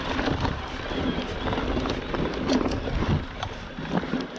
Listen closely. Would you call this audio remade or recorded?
recorded